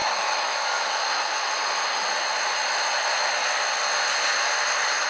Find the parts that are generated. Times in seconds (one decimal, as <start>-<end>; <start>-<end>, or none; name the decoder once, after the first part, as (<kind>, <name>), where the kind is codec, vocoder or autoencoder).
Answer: 0.0-1.0 (autoencoder, DAC-VAE)